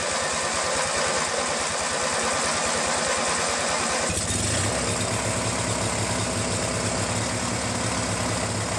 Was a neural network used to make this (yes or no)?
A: no